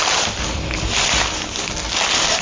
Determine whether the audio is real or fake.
real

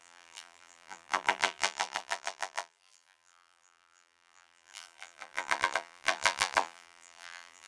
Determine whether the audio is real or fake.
fake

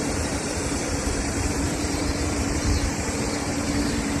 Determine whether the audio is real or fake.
fake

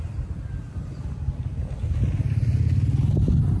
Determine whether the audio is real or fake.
real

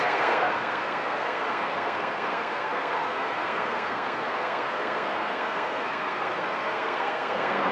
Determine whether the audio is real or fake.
fake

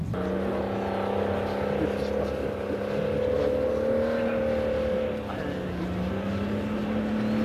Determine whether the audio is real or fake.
real